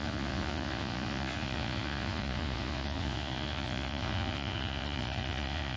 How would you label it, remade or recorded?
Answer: remade